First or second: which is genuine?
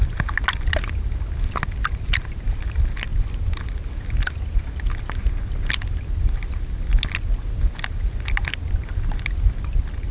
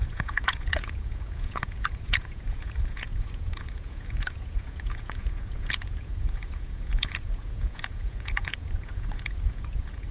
first